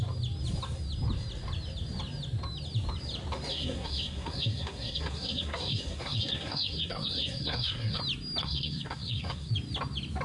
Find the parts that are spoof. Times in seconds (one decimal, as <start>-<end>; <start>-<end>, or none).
3.5-8.0; 8.4-9.5